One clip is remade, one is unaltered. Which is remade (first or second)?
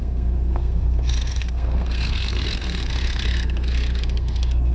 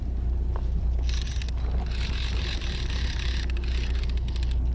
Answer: first